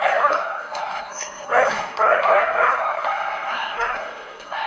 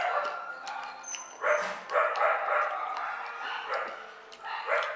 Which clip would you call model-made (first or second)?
first